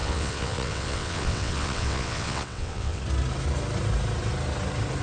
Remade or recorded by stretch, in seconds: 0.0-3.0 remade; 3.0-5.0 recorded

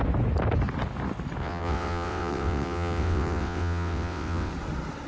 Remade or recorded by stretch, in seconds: 0.0-1.4 recorded; 1.4-4.5 remade; 4.5-5.1 recorded

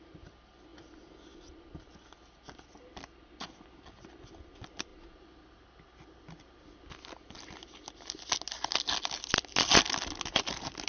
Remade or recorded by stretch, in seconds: 0.0-10.9 recorded

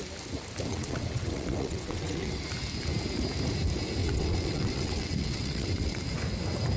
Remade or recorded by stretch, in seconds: 0.0-0.7 recorded; 0.7-2.4 remade; 2.4-4.0 recorded; 4.0-6.0 remade; 6.0-6.8 recorded

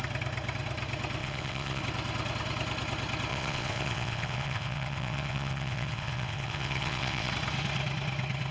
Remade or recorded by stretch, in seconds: 0.0-1.2 recorded; 1.2-1.8 remade; 1.8-3.3 recorded; 3.3-7.3 remade; 7.3-8.5 recorded

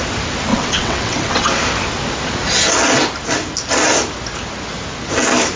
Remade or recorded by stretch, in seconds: 0.0-0.5 recorded; 0.5-1.5 remade; 1.5-5.6 recorded